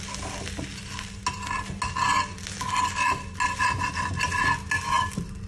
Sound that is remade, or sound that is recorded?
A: recorded